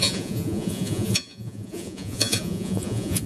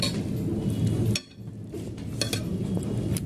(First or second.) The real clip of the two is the second